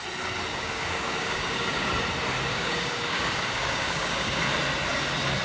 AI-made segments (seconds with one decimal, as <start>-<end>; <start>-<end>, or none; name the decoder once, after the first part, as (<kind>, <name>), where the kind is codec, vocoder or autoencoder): 0.5-1.9 (codec, DAC); 2.5-4.4